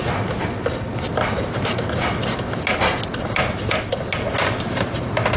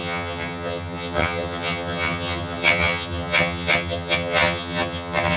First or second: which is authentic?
first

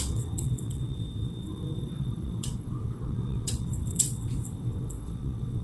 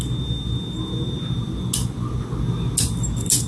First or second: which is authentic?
second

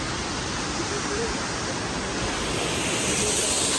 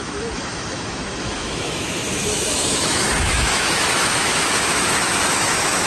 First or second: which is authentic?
first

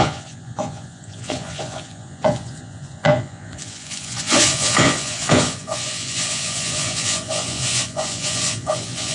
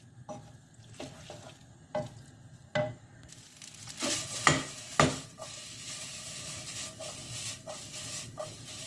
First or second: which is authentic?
second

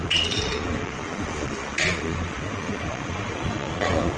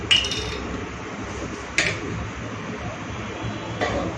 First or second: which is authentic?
second